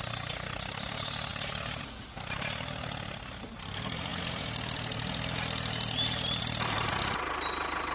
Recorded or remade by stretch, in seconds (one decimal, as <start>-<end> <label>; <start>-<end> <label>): 0.0-7.9 recorded